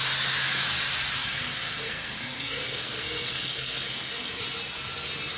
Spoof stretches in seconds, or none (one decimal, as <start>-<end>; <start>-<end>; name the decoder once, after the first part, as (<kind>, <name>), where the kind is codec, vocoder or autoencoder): 1.2-4.4 (codec, SNAC)

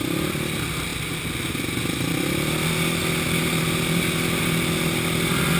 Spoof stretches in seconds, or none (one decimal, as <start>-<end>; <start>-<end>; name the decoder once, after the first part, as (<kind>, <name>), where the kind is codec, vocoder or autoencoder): none